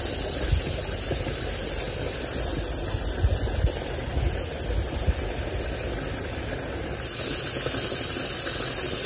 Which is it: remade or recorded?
recorded